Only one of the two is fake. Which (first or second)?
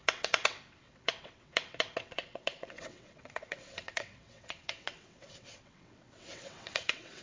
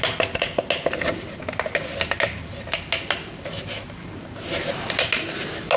first